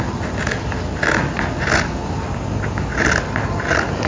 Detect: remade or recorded recorded